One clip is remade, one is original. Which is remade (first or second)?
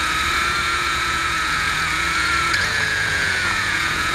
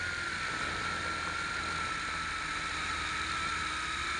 first